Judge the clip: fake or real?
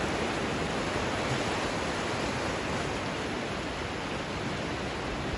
real